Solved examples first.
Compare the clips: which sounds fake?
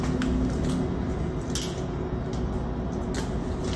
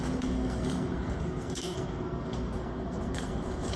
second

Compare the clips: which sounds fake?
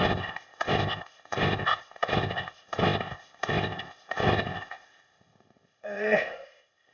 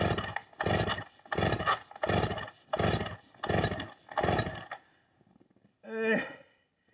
first